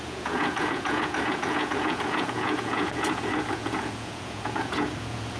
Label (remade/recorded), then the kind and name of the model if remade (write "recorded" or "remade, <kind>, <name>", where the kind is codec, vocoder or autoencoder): remade, vocoder, Vocos